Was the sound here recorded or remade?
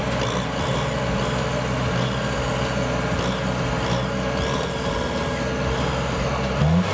recorded